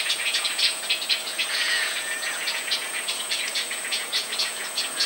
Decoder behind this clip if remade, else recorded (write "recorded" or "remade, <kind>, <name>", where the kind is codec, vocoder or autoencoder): remade, vocoder, Vocos